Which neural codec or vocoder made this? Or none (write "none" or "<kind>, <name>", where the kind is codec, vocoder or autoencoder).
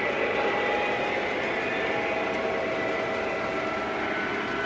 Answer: none